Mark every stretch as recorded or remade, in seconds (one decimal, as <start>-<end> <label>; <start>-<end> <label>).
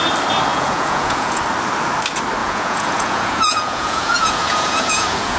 0.0-0.5 recorded; 0.5-1.4 remade; 1.4-2.4 recorded; 2.4-5.4 remade